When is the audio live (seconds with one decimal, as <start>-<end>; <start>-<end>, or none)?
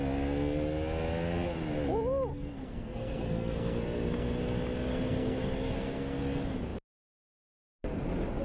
0.0-2.3; 4.4-4.9; 6.2-8.4